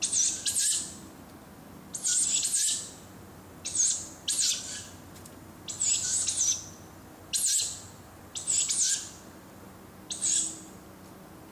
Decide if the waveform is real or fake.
real